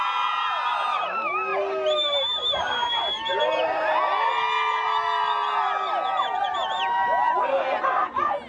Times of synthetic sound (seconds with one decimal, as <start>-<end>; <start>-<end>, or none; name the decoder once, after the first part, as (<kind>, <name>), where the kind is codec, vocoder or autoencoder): none